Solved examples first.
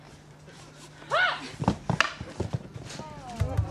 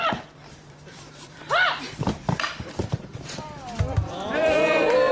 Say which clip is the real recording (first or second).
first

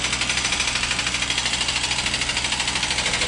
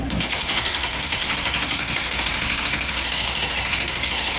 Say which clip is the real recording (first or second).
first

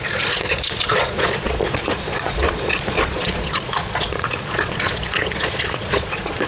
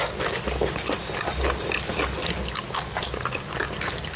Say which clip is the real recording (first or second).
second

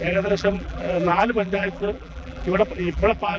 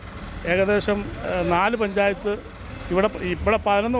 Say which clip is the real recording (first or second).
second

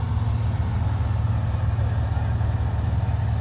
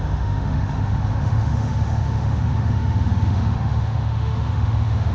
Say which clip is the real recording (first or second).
first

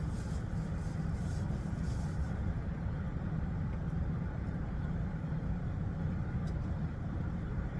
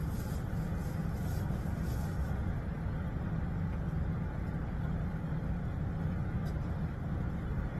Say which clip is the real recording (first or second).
second